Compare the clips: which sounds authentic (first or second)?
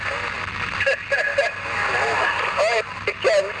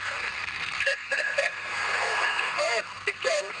first